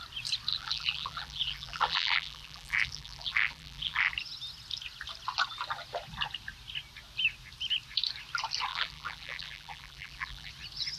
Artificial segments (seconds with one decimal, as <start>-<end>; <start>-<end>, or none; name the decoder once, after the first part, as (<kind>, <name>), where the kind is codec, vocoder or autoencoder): 0.5-4.1 (vocoder, BigVGAN v2); 8.7-10.5